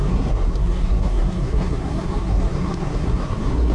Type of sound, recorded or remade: remade